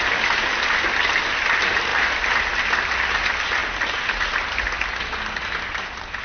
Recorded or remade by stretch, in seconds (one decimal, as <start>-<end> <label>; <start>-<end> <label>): 0.0-6.2 recorded